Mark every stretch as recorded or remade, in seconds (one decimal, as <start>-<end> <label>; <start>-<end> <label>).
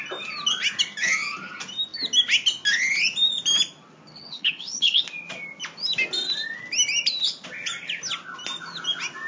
0.0-4.1 recorded; 4.1-5.0 remade; 5.0-9.3 recorded